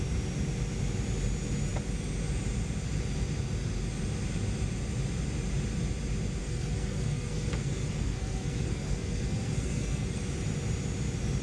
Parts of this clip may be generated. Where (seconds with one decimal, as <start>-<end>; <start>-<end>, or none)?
6.4-10.2